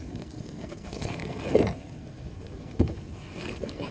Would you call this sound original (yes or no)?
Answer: no